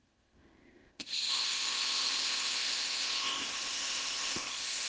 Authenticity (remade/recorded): remade